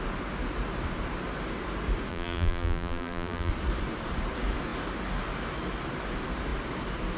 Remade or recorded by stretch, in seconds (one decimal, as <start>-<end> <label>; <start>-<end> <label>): 0.0-2.1 recorded; 2.1-3.5 remade; 3.5-7.2 recorded

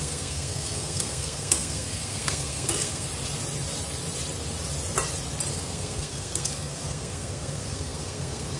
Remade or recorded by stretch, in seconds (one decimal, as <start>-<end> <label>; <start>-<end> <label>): 0.0-3.1 remade; 3.1-5.5 recorded; 5.5-8.6 remade

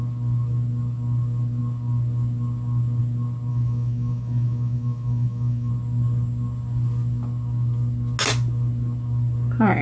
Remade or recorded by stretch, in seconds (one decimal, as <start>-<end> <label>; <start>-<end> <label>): 0.0-3.5 recorded; 3.5-5.7 remade; 5.7-9.8 recorded

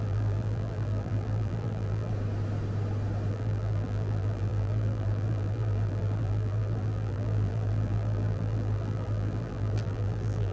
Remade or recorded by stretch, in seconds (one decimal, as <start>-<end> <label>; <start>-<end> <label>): 0.0-2.1 remade; 2.1-3.3 recorded; 3.3-10.5 remade

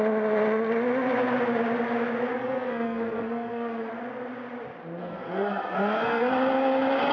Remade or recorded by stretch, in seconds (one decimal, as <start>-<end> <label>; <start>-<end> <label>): 0.0-2.3 recorded; 2.3-3.9 remade; 3.9-5.0 recorded; 5.0-6.3 remade; 6.3-7.1 recorded

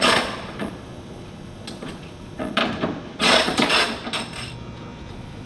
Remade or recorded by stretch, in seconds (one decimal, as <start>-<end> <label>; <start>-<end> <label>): 0.0-2.6 remade; 2.6-3.2 recorded; 3.2-4.0 remade; 4.0-5.1 recorded; 5.1-5.5 remade

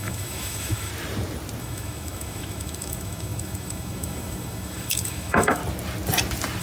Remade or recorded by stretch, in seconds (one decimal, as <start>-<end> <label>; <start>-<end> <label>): 0.0-0.9 remade; 0.9-1.6 recorded; 1.6-5.6 remade; 5.6-6.6 recorded

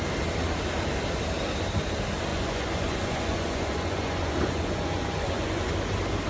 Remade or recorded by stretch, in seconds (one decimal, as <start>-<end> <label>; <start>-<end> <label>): 0.0-2.3 recorded; 2.3-5.7 remade; 5.7-6.3 recorded